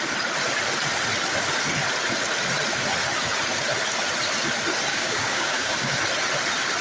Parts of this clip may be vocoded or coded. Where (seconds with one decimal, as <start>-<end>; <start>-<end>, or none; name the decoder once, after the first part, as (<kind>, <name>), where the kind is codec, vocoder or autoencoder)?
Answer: 4.9-6.0 (codec, DAC)